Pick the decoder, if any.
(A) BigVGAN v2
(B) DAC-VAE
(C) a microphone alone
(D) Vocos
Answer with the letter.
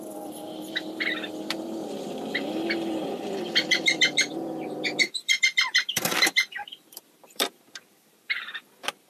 A